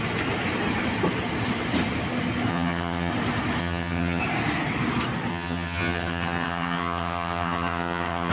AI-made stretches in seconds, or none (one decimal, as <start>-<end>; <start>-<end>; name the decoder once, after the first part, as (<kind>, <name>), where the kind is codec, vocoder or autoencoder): 2.5-3.1 (vocoder, HiFi-GAN); 3.6-4.2; 5.3-8.3